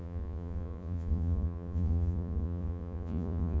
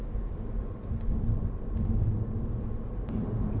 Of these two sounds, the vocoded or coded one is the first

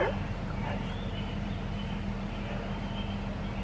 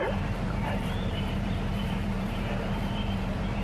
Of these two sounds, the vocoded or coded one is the second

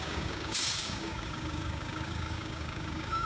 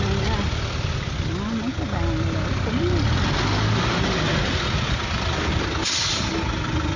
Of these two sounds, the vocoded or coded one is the first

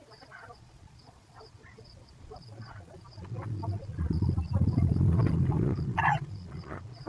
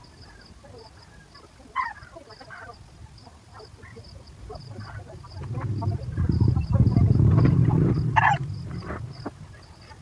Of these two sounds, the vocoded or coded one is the first